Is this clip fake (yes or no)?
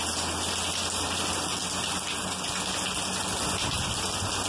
no